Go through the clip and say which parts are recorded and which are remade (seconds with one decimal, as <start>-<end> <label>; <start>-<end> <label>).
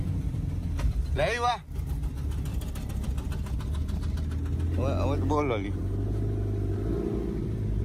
0.0-7.8 recorded